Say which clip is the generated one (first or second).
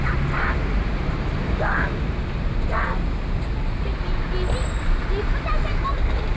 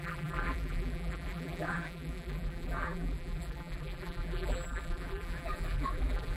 second